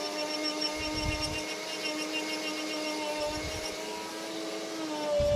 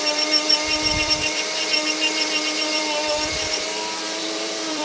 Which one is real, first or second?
first